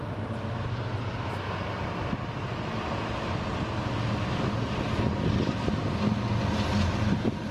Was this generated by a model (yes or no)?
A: no